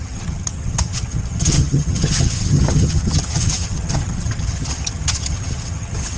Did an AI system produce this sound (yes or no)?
yes